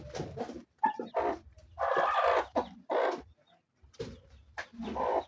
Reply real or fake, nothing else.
real